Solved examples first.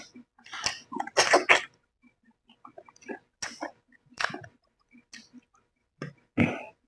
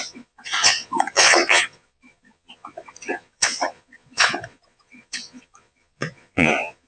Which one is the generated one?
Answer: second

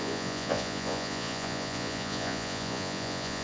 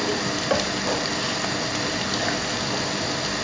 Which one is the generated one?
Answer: first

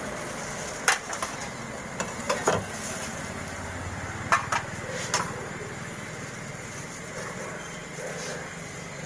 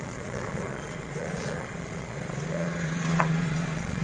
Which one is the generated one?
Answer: second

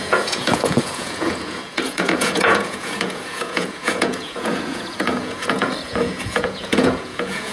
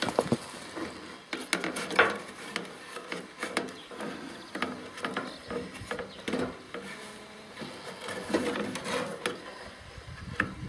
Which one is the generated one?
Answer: first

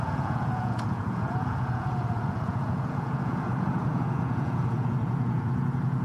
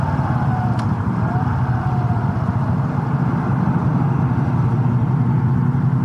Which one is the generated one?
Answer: first